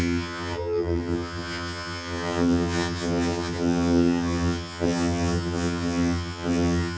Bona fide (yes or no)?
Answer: no